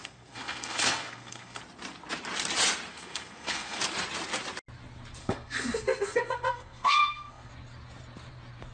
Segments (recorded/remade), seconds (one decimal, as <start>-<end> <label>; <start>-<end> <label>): 0.0-1.6 remade; 1.6-2.9 recorded; 2.9-3.8 remade; 3.8-5.2 recorded; 5.2-7.5 remade; 7.5-8.7 recorded